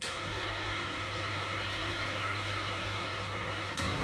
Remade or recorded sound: remade